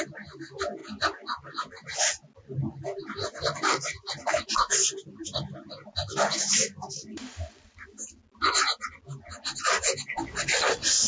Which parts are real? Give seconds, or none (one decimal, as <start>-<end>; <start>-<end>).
0.0-11.1